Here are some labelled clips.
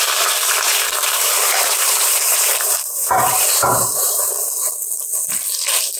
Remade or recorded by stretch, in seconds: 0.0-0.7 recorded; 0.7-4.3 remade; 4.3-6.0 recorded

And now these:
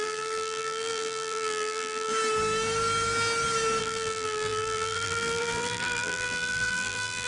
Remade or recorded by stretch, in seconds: 0.0-2.1 remade; 2.1-3.8 recorded; 3.8-7.3 remade

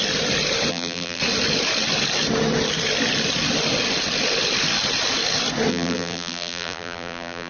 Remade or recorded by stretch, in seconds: 0.0-0.7 recorded; 0.7-1.2 remade; 1.2-5.7 recorded; 5.7-7.5 remade

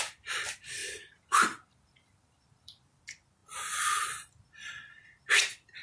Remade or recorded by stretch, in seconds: 0.0-0.8 recorded; 0.8-3.0 remade; 3.0-5.8 recorded

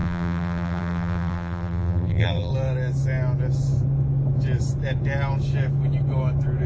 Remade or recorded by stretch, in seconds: 0.0-2.5 remade; 2.5-6.7 recorded

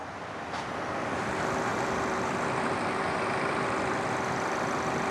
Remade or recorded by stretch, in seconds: 0.0-0.8 recorded; 0.8-5.1 remade